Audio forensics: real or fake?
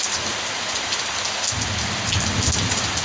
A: real